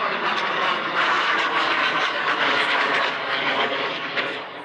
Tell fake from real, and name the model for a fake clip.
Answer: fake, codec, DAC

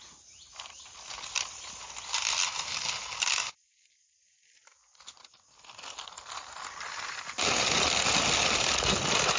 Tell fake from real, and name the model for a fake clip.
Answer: real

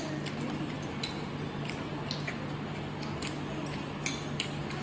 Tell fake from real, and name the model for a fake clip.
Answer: real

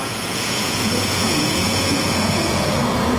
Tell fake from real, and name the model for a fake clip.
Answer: fake, vocoder, Vocos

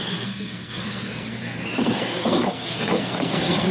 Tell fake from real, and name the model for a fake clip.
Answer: fake, codec, SNAC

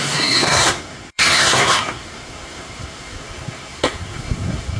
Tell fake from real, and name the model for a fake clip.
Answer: fake, codec, SNAC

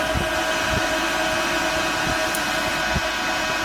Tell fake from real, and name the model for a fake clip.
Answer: real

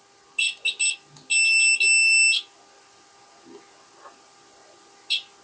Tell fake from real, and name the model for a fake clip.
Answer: real